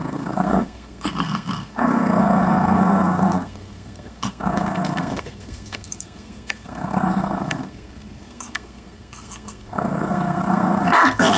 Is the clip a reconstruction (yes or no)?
yes